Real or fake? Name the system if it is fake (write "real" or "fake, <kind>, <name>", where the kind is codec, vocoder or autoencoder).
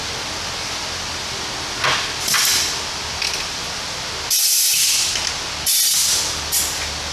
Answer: real